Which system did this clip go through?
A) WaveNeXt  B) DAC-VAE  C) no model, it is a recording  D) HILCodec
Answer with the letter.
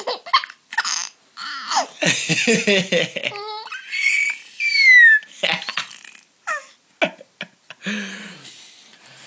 C